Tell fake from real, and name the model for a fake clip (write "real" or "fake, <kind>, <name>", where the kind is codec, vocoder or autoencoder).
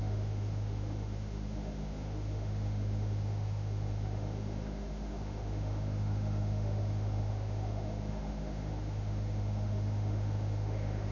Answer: fake, autoencoder, DAC-VAE